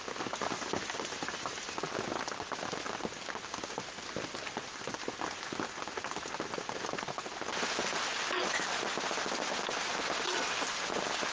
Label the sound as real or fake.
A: real